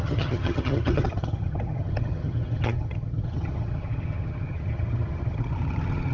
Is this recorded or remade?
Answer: remade